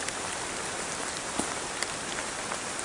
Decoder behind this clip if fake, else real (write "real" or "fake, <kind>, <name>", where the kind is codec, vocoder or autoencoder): real